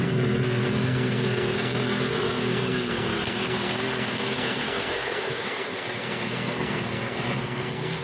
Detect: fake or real fake